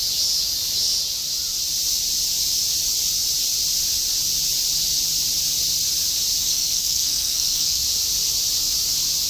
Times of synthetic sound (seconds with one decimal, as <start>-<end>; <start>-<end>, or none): 6.4-7.8